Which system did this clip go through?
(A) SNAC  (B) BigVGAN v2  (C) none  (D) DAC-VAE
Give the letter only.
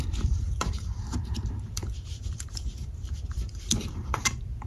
B